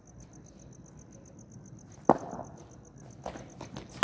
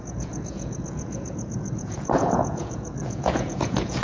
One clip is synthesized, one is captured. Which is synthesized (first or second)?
second